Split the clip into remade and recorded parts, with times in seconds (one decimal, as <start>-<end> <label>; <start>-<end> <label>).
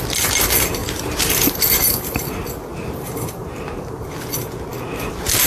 0.0-0.8 recorded; 0.8-2.2 remade; 2.2-2.7 recorded; 2.7-4.1 remade; 4.1-5.5 recorded